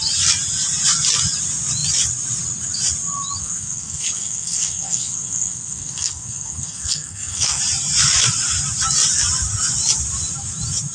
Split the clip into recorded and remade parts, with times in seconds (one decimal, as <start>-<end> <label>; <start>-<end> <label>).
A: 0.0-3.4 recorded; 3.4-7.6 remade; 7.6-10.9 recorded